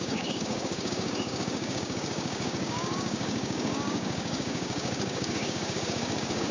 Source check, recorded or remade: remade